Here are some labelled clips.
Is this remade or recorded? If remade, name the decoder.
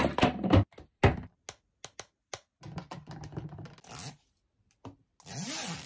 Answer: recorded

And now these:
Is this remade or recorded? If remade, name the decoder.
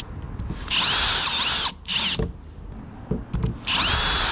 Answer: recorded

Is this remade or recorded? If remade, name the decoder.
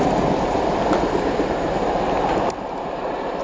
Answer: recorded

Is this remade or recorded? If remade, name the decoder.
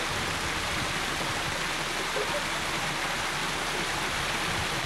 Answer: recorded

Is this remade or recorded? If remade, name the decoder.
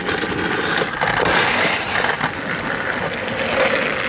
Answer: recorded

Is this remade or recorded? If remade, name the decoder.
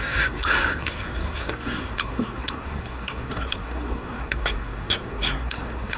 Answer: remade, codec, SNAC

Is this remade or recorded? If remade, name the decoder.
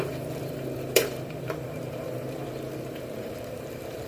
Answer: remade, vocoder, BigVGAN v2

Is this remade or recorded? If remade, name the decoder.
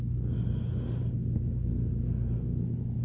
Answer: recorded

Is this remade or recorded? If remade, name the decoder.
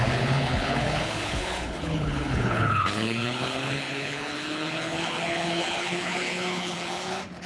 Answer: remade, codec, HILCodec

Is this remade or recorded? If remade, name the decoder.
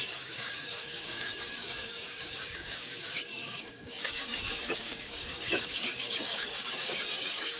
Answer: remade, codec, DAC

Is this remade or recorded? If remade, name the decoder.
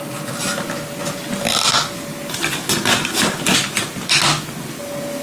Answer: recorded